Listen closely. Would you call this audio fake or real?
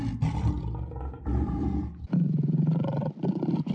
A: real